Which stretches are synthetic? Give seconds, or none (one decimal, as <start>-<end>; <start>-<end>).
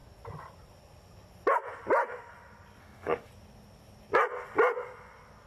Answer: 2.8-3.3